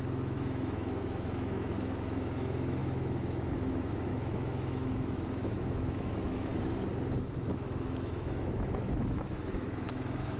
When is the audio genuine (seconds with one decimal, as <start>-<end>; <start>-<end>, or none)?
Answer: 6.5-7.2

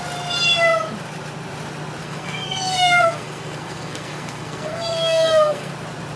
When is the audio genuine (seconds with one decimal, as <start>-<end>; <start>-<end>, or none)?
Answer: 0.0-2.0; 5.7-6.2

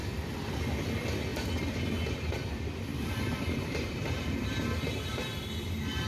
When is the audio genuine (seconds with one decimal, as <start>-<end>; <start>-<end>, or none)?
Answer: 0.0-2.9; 4.9-6.1

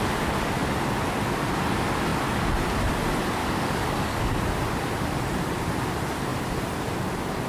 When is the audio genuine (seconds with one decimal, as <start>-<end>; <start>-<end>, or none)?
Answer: 0.0-3.4; 4.4-7.5

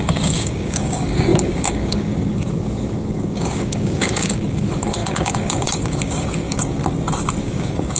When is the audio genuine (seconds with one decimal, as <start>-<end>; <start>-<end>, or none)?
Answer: 6.8-7.4

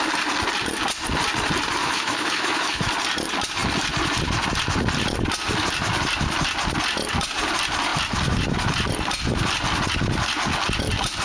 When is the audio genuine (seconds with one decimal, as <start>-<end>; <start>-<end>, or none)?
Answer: 0.0-1.8; 2.9-11.2

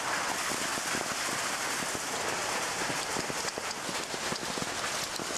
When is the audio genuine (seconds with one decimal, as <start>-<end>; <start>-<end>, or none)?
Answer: 0.0-5.4